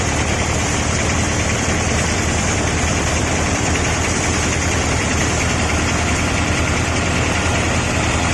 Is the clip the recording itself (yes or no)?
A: no